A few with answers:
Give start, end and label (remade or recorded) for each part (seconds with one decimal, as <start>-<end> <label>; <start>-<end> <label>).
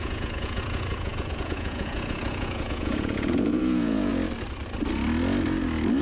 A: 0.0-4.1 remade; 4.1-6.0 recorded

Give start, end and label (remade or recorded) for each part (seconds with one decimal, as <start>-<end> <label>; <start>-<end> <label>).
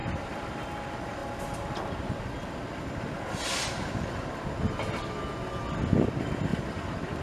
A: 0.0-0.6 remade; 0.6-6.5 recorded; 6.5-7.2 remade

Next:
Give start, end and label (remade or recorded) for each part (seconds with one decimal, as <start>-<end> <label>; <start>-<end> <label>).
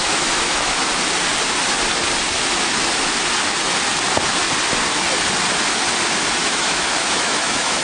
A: 0.0-0.8 remade; 0.8-6.4 recorded; 6.4-7.8 remade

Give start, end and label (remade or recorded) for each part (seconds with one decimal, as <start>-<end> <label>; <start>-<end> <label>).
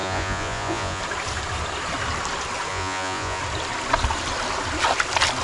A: 0.0-1.0 remade; 1.0-2.7 recorded; 2.7-3.4 remade; 3.4-5.4 recorded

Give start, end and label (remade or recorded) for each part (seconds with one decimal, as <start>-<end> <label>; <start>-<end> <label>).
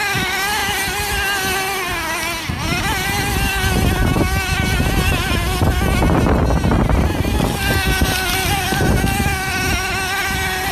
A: 0.0-10.7 recorded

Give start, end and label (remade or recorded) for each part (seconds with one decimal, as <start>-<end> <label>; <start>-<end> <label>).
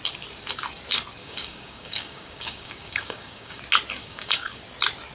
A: 0.0-1.2 recorded; 1.2-3.6 remade; 3.6-4.0 recorded; 4.0-4.6 remade; 4.6-5.1 recorded